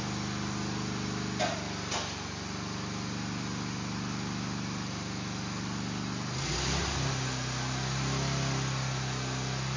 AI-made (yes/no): no